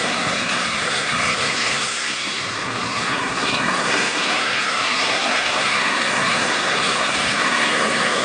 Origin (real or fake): fake